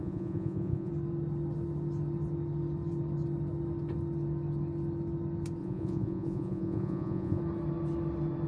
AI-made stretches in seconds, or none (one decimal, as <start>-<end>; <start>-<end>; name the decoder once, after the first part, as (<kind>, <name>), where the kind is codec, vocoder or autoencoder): 0.0-0.9 (vocoder, Vocos); 5.6-7.4